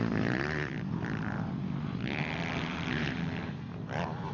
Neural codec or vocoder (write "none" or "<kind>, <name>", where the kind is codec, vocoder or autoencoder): vocoder, BigVGAN v2